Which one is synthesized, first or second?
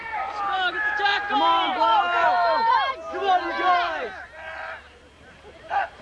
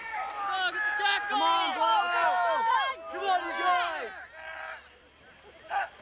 first